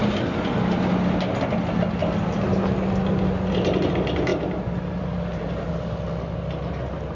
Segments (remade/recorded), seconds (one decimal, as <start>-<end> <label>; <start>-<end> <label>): 0.0-4.3 recorded; 4.3-5.7 remade; 5.7-7.2 recorded